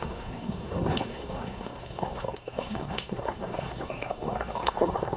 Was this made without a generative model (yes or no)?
no